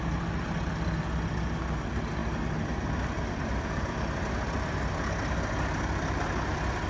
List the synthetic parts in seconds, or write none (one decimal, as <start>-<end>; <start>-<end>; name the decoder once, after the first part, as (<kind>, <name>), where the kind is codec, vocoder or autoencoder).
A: 2.2-4.8 (vocoder, BigVGAN v2)